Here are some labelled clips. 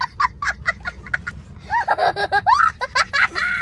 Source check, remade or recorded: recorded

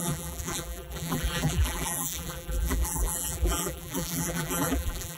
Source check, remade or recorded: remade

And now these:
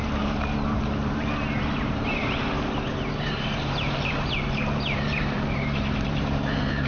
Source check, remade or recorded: remade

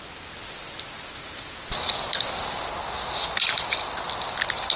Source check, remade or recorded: recorded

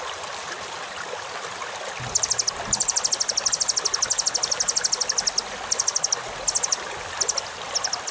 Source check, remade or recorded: recorded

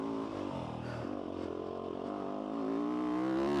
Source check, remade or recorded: recorded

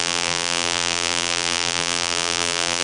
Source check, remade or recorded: remade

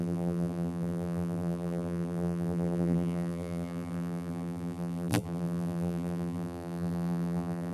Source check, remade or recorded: remade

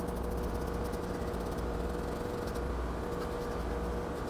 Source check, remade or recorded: recorded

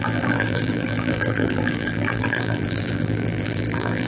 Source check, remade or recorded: remade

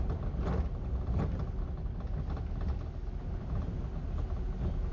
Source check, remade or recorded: recorded